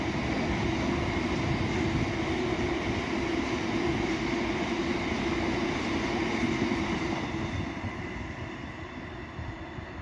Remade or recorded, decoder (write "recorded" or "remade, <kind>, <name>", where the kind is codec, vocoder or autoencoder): recorded